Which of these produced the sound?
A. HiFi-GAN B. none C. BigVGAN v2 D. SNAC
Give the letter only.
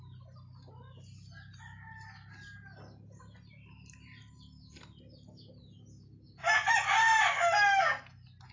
B